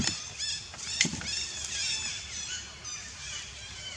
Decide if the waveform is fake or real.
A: real